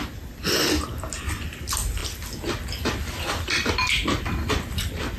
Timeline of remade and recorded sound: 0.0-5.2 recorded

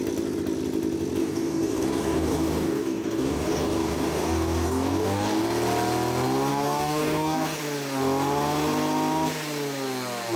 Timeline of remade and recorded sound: 0.0-1.2 recorded; 1.2-5.4 remade; 5.4-6.5 recorded; 6.5-7.6 remade; 7.6-10.4 recorded